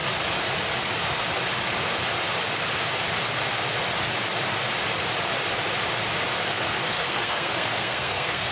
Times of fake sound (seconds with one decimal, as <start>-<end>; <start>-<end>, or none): 6.4-8.5